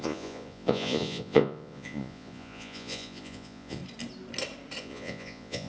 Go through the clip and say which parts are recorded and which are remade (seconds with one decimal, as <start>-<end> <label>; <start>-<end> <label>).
0.0-3.8 remade; 3.8-4.8 recorded; 4.8-5.7 remade